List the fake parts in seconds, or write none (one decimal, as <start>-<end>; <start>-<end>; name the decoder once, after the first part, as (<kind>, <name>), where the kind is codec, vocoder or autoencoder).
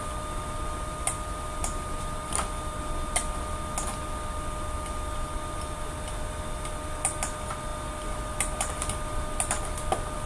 none